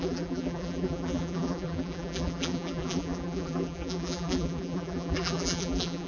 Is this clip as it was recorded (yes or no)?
no